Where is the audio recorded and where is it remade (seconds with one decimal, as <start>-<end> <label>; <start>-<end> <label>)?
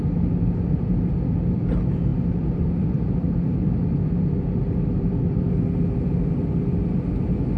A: 0.0-2.1 recorded; 2.1-5.4 remade; 5.4-7.6 recorded